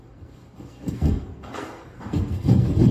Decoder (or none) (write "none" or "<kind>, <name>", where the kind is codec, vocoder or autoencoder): codec, SNAC